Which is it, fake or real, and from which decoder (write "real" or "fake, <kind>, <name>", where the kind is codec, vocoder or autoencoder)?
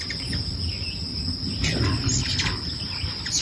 real